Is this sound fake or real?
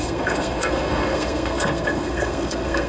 fake